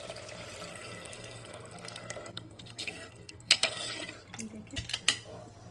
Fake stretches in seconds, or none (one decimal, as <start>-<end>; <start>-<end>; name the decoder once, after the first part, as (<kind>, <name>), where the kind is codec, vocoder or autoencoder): 0.7-4.1 (codec, SNAC)